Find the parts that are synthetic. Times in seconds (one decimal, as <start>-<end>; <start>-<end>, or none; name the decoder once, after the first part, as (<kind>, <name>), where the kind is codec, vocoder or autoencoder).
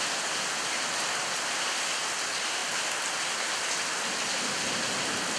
none